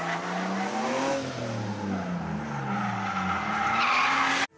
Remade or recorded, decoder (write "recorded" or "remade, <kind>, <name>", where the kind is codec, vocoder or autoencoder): recorded